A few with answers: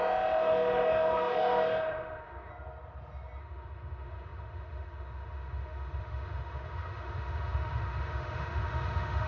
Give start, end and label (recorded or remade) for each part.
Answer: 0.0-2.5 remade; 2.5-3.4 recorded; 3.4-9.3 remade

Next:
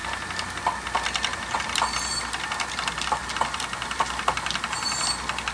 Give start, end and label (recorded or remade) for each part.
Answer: 0.0-5.5 recorded

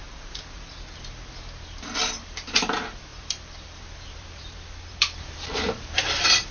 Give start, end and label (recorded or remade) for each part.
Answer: 0.0-2.0 recorded; 2.0-6.5 remade

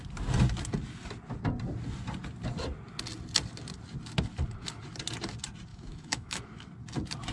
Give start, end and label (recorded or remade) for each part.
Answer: 0.0-5.7 recorded; 5.7-6.4 remade; 6.4-7.3 recorded

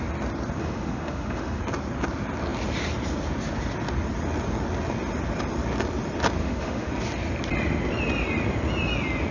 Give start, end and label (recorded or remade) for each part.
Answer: 0.0-0.6 recorded; 0.6-1.6 remade; 1.6-6.4 recorded; 6.4-6.9 remade; 6.9-9.3 recorded

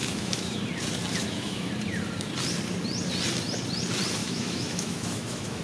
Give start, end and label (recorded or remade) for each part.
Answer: 0.0-0.6 remade; 0.6-1.2 recorded; 1.2-1.7 remade; 1.7-4.2 recorded; 4.2-5.6 remade

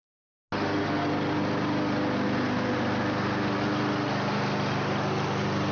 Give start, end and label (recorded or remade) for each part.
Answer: 0.0-5.7 recorded

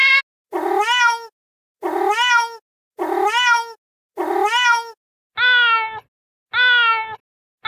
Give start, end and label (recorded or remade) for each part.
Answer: 0.0-7.7 recorded